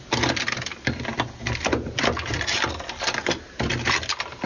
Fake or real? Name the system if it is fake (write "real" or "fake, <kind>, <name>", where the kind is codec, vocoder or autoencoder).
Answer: real